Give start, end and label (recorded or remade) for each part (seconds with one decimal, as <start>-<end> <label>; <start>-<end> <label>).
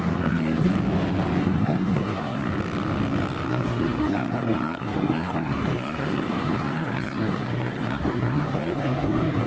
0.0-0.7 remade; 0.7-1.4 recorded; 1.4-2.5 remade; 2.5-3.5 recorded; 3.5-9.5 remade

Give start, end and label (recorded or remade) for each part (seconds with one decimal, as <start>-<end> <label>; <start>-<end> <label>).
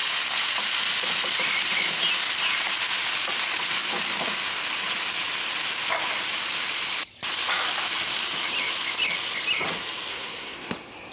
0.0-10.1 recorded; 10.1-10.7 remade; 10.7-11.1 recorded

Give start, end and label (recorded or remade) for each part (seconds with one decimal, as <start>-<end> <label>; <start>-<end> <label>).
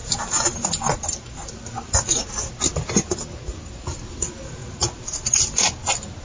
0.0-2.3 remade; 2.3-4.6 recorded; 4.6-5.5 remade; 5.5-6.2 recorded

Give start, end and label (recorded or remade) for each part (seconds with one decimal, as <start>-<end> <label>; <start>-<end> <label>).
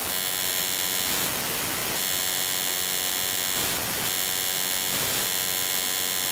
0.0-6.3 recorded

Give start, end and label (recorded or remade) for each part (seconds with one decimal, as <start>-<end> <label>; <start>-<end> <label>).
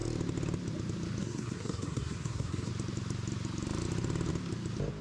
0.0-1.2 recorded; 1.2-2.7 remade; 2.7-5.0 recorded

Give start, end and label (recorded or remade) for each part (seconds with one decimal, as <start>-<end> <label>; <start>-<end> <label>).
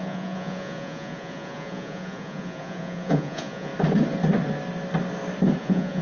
0.0-3.7 remade; 3.7-5.6 recorded; 5.6-6.0 remade